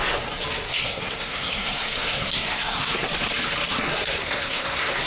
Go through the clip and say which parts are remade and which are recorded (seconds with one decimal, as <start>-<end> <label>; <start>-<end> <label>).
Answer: 0.0-0.7 recorded; 0.7-3.0 remade; 3.0-3.7 recorded; 3.7-5.1 remade